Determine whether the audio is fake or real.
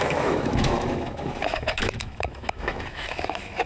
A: fake